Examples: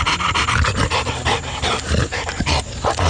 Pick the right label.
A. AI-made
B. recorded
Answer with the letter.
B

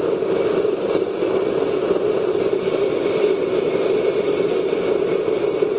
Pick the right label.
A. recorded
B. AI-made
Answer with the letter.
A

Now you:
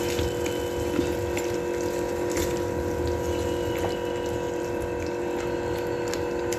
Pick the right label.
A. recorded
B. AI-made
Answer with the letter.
A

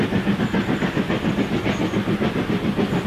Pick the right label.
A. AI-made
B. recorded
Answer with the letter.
B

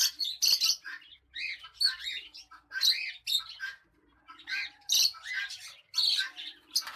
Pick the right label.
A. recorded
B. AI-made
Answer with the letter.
A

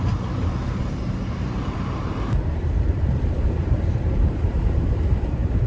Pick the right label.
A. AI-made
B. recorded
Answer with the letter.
A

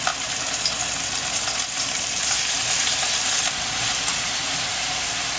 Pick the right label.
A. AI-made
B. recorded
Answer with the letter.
A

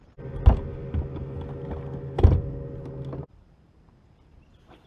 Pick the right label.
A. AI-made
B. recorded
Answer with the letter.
B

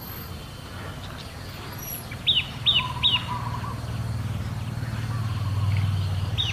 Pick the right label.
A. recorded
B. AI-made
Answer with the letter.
A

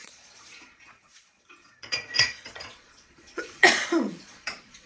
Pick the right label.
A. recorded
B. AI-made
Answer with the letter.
B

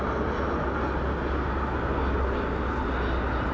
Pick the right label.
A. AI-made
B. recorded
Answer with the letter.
B